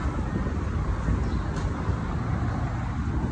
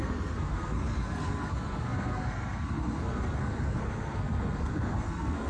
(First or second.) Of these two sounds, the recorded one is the first